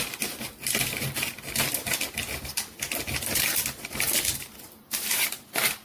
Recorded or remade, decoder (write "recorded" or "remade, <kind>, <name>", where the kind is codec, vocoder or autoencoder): recorded